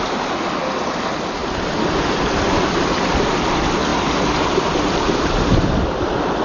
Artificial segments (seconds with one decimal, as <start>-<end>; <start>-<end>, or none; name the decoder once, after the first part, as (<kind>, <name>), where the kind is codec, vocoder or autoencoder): none